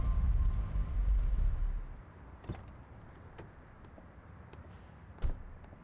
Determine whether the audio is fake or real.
fake